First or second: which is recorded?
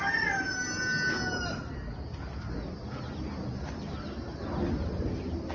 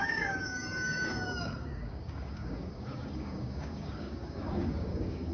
first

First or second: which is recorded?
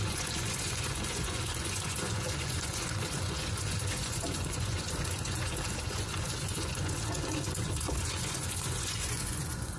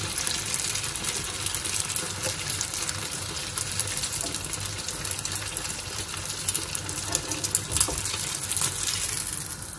second